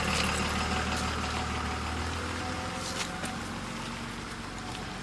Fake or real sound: real